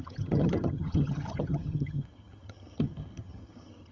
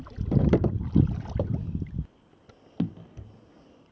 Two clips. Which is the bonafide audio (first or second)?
second